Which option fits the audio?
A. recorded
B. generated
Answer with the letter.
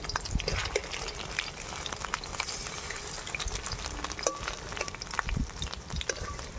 A